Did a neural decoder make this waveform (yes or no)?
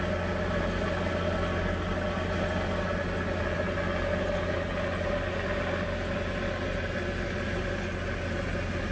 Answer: no